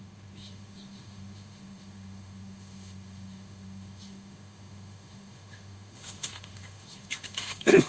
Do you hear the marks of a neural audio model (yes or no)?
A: yes